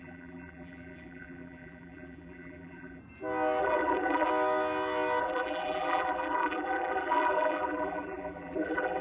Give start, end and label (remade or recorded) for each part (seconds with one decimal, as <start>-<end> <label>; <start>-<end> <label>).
0.0-3.0 remade; 3.0-3.6 recorded; 3.6-4.3 remade; 4.3-5.2 recorded; 5.2-9.0 remade